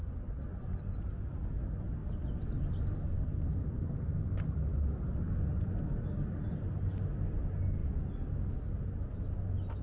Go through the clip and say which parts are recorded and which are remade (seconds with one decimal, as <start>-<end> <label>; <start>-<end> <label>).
0.0-9.8 recorded